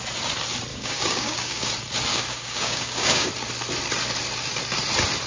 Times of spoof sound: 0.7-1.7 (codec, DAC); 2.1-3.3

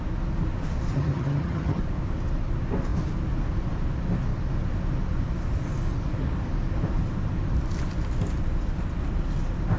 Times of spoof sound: 0.9-1.8 (vocoder, HiFi-GAN)